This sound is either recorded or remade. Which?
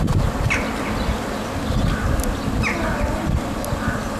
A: recorded